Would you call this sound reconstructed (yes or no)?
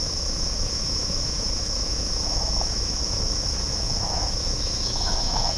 yes